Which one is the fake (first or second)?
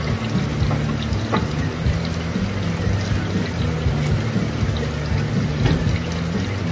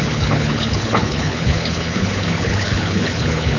second